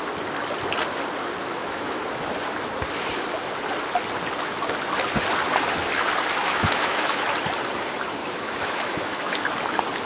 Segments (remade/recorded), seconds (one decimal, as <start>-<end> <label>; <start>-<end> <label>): 0.0-1.4 recorded; 1.4-2.0 remade; 2.0-6.4 recorded; 6.4-7.2 remade; 7.2-8.2 recorded; 8.2-9.4 remade; 9.4-10.1 recorded